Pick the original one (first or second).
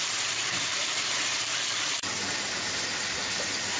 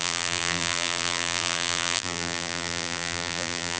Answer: first